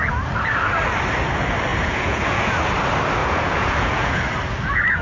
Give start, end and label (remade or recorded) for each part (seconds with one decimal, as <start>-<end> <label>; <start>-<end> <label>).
0.0-1.7 recorded; 1.7-2.5 remade; 2.5-3.2 recorded; 3.2-4.2 remade; 4.2-5.0 recorded